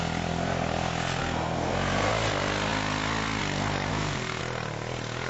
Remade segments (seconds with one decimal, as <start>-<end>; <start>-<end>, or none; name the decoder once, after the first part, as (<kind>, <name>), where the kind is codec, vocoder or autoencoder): 1.2-2.1 (codec, SNAC); 3.9-4.4